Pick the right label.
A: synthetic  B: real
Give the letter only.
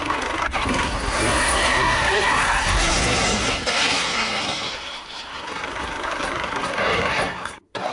A